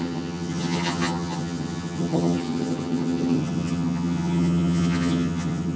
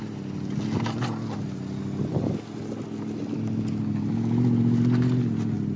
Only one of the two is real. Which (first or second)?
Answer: second